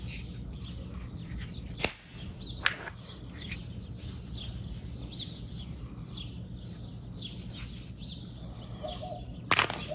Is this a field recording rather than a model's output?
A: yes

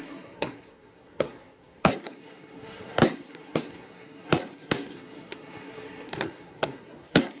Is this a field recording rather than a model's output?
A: no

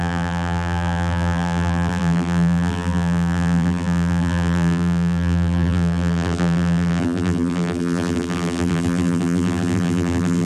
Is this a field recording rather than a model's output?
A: no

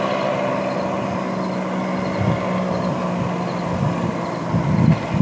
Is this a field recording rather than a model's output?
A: yes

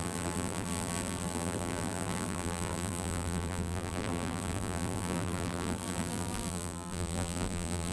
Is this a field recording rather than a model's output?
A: no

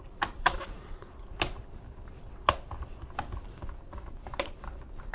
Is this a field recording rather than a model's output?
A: yes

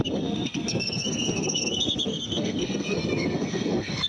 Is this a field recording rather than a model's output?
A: no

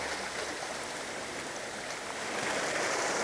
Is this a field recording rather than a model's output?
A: yes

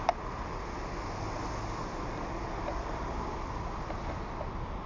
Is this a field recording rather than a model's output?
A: yes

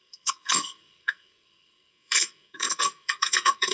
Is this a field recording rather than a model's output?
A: no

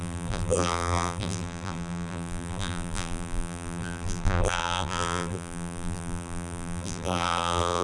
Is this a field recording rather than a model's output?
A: no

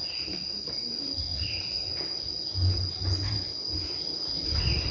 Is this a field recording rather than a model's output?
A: yes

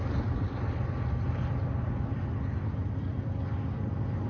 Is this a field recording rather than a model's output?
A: yes